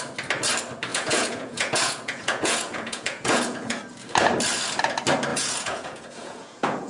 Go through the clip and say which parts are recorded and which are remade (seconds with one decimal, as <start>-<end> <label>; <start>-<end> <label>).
0.0-0.9 recorded; 0.9-3.8 remade; 3.8-5.3 recorded; 5.3-6.9 remade